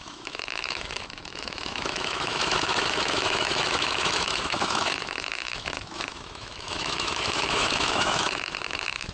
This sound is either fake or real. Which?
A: fake